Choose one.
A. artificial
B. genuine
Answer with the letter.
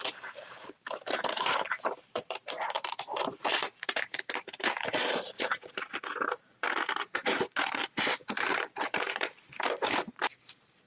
A